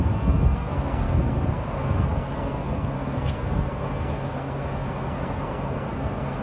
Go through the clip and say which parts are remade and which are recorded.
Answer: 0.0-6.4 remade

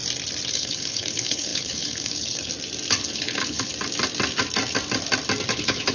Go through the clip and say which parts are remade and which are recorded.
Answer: 0.0-0.5 recorded; 0.5-2.5 remade; 2.5-3.1 recorded; 3.1-3.7 remade; 3.7-5.5 recorded; 5.5-5.9 remade

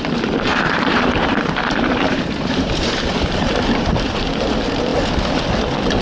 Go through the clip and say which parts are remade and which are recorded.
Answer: 0.0-0.5 recorded; 0.5-4.1 remade; 4.1-6.0 recorded

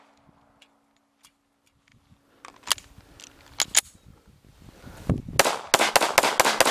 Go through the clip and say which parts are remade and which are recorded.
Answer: 0.0-6.7 recorded